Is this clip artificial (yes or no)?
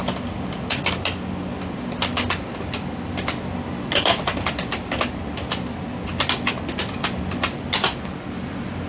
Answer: no